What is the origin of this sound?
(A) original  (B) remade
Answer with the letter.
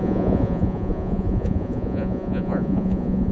B